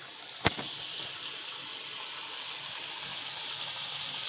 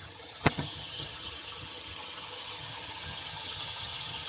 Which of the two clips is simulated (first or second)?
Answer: second